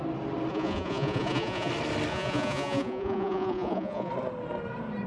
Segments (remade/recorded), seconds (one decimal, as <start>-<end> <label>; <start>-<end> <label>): 0.0-0.5 recorded; 0.5-1.7 remade; 1.7-2.1 recorded; 2.1-4.1 remade; 4.1-5.1 recorded